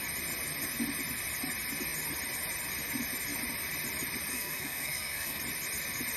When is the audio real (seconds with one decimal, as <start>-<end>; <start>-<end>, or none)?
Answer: 0.0-4.3; 5.4-6.2